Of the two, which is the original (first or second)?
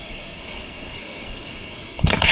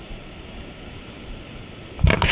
second